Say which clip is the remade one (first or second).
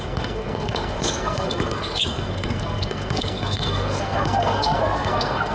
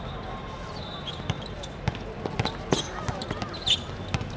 first